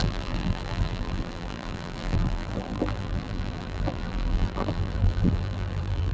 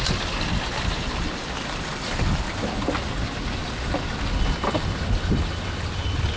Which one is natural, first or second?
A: second